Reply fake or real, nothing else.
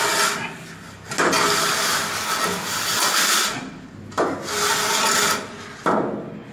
real